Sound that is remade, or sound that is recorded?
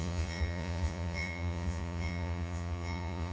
remade